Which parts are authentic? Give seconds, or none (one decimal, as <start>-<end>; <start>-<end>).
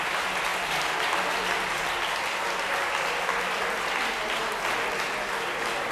0.0-5.9